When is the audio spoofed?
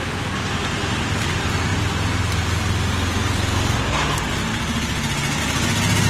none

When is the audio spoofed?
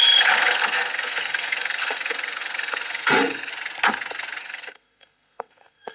0.0-3.5; 4.4-5.9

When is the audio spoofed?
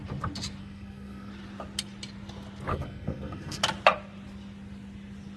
0.6-1.3; 2.7-3.6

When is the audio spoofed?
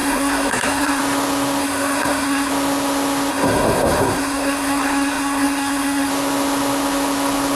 0.0-1.0; 1.6-2.5; 3.3-6.1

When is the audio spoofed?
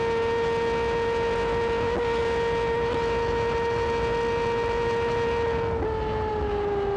none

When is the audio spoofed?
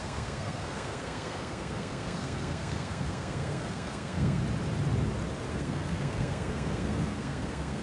0.0-4.4; 5.5-7.8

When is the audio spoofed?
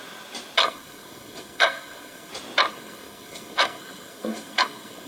0.6-2.3; 2.7-5.1